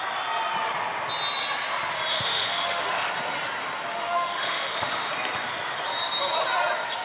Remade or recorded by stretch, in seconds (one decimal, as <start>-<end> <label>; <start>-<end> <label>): 0.0-2.1 recorded; 2.1-3.2 remade; 3.2-3.9 recorded; 3.9-5.1 remade; 5.1-7.0 recorded